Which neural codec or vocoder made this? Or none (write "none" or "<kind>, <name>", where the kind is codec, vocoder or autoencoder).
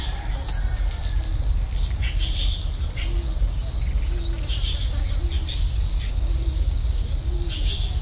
none